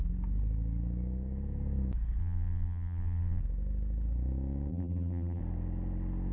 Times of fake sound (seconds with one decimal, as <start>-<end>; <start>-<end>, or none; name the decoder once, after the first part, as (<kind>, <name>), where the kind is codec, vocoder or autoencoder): 2.2-3.4 (vocoder, BigVGAN v2); 4.7-5.4